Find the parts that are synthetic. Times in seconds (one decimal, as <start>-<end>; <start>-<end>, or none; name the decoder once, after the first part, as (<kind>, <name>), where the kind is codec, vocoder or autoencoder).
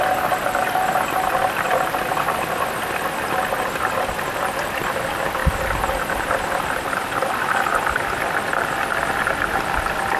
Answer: 5.4-9.1 (vocoder, BigVGAN v2)